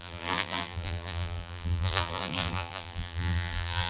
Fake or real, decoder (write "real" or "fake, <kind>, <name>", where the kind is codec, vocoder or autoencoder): fake, vocoder, BigVGAN v2